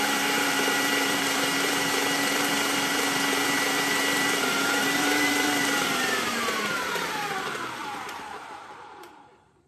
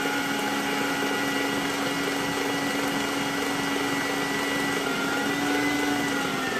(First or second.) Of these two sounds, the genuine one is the second